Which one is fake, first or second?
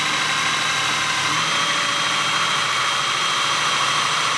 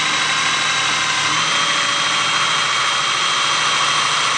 first